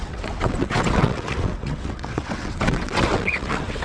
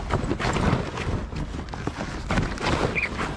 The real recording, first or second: second